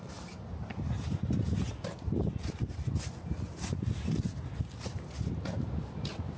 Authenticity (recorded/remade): recorded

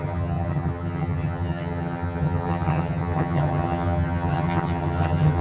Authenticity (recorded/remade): remade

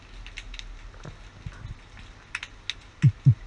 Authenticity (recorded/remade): recorded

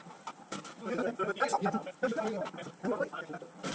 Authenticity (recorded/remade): remade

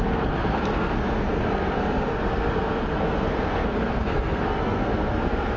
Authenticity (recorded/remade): remade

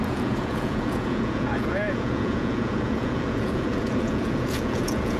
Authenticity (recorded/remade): remade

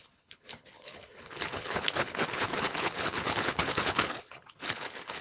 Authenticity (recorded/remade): remade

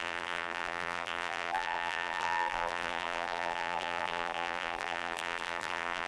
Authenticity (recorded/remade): remade